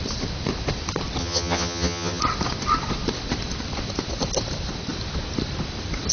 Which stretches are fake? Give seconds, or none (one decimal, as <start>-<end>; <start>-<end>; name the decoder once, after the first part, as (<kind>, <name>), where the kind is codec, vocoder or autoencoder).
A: 1.2-2.2 (vocoder, HiFi-GAN)